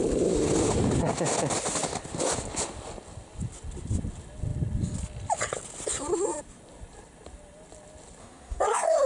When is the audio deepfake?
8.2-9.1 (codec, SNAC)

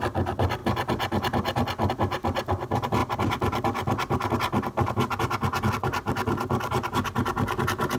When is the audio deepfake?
none

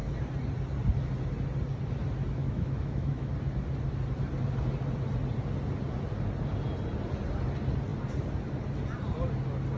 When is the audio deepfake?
2.4-3.3 (autoencoder, DAC-VAE)

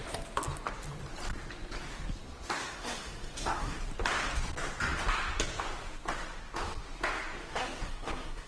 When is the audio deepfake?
2.6-3.8 (codec, SNAC); 7.4-8.5

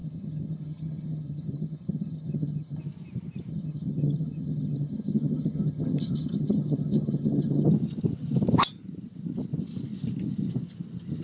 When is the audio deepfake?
0.0-2.8 (vocoder, HiFi-GAN); 3.5-7.7